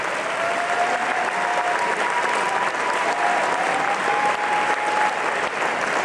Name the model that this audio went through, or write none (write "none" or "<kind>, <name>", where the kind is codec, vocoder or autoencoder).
none